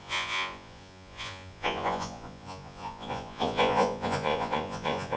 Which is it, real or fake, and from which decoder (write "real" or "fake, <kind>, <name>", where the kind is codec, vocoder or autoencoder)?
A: fake, vocoder, Vocos